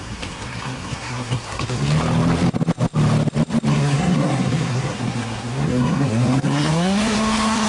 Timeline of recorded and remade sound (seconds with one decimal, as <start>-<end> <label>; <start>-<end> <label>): 0.0-1.9 remade; 1.9-3.7 recorded; 3.7-7.7 remade